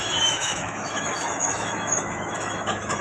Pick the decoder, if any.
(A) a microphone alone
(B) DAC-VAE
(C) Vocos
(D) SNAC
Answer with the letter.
B